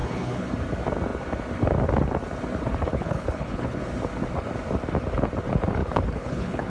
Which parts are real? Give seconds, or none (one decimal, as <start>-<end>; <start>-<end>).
0.5-2.9; 3.8-5.8